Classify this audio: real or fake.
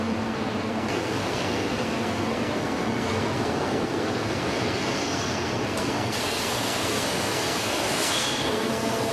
fake